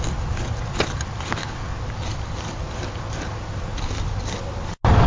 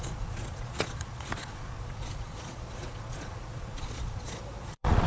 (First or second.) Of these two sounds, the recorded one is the first